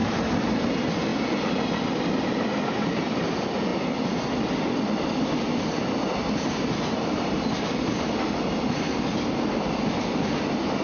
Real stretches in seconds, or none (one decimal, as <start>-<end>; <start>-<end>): 0.0-10.8

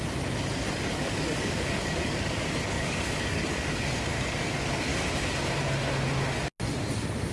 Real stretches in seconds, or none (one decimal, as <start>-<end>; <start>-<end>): 0.0-0.9; 4.9-7.3